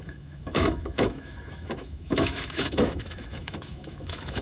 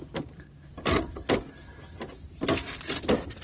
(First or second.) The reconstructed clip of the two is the first